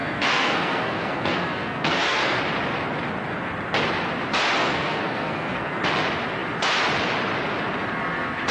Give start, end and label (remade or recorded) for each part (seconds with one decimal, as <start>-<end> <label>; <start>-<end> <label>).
0.0-2.4 remade; 2.4-4.6 recorded; 4.6-5.8 remade; 5.8-8.5 recorded